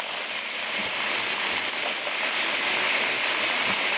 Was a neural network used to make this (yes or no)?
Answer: no